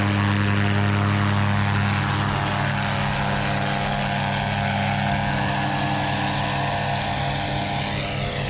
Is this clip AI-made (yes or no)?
no